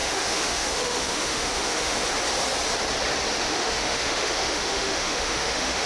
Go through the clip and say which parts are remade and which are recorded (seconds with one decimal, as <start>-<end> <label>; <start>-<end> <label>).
0.0-2.0 remade; 2.0-3.4 recorded; 3.4-5.9 remade